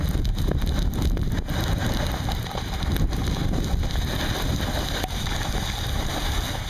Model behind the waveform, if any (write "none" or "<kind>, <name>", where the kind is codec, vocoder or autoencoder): none